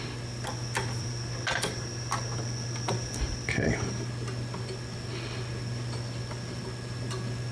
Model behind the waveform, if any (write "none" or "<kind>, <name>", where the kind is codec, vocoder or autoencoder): none